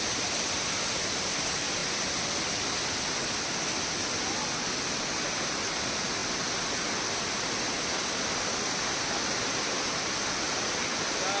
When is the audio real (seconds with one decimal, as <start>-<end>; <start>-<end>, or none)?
0.0-11.4